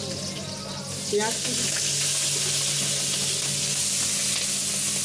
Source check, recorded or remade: recorded